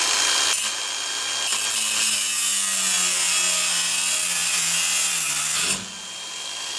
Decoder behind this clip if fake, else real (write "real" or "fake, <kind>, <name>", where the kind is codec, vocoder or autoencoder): real